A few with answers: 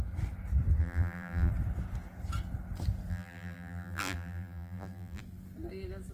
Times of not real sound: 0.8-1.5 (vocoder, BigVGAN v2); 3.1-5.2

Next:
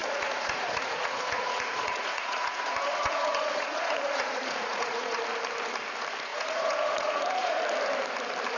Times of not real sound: 0.0-5.2 (vocoder, Vocos); 6.3-7.6

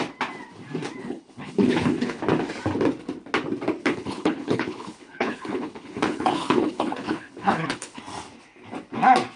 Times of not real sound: 1.0-2.2 (codec, HILCodec); 3.8-8.0

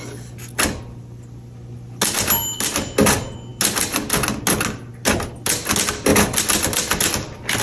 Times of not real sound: none

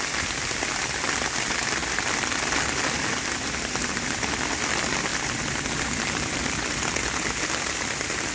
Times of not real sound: none

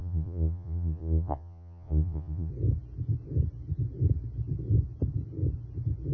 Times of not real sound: 0.0-2.5 (vocoder, Vocos)